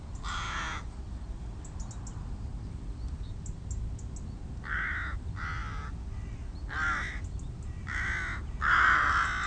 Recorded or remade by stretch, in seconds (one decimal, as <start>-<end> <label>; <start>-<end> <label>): 0.0-9.5 recorded